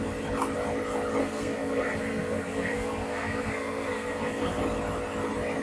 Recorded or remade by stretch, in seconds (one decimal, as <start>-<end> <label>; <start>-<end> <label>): 0.0-1.2 recorded; 1.2-4.6 remade; 4.6-5.6 recorded